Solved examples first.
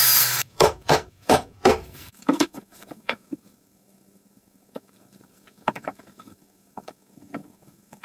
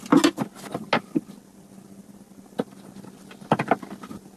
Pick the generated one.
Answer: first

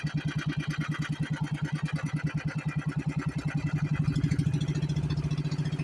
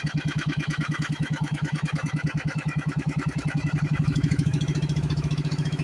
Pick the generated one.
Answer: second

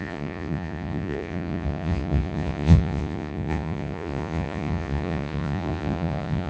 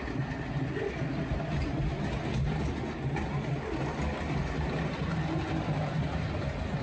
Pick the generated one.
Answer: first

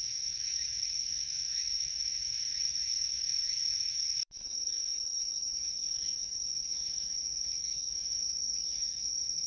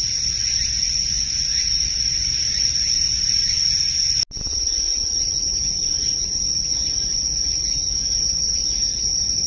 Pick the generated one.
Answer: first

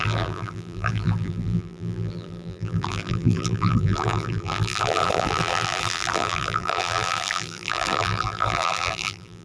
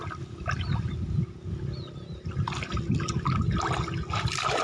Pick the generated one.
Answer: first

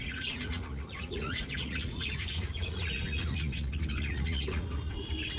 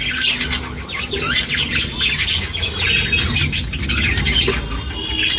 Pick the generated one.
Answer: first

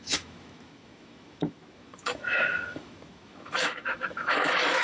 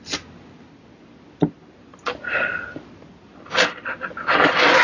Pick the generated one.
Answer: first